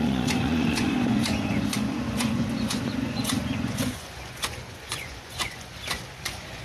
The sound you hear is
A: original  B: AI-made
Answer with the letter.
B